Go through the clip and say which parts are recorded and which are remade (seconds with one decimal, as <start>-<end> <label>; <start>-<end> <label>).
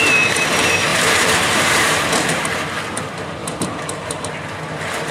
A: 0.0-0.9 recorded; 0.9-2.5 remade; 2.5-3.4 recorded; 3.4-4.3 remade; 4.3-5.1 recorded